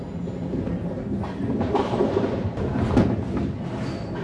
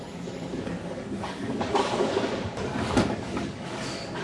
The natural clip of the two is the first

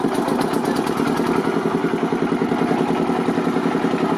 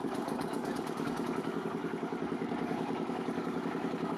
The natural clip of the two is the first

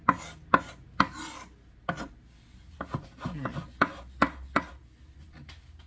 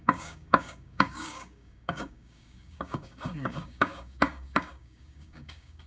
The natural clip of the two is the first